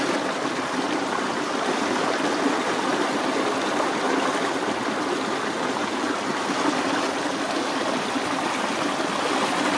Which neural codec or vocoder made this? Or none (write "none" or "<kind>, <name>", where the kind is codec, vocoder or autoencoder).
none